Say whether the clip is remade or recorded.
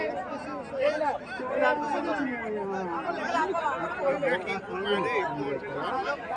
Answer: recorded